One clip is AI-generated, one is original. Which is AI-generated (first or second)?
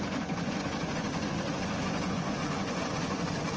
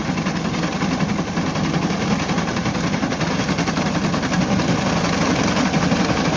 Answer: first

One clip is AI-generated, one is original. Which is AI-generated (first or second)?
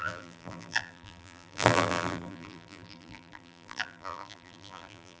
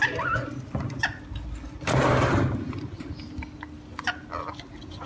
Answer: first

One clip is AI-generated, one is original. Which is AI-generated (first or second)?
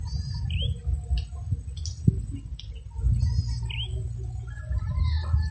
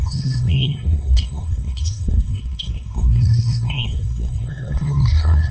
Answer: second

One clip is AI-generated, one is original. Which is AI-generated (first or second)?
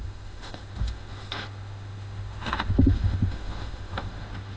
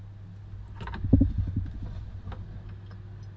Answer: first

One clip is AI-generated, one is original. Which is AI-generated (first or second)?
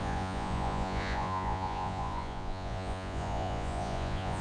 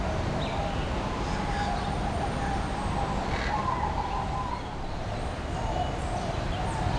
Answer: first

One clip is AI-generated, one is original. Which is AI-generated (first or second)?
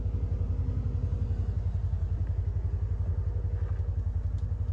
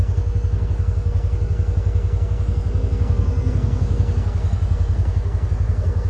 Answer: second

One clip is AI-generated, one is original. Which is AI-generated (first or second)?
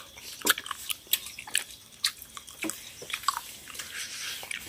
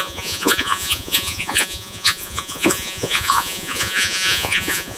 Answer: second